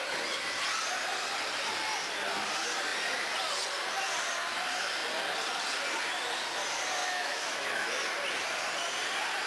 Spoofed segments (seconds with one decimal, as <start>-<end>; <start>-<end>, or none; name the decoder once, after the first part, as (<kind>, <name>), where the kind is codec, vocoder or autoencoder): 7.0-7.9 (autoencoder, DAC-VAE)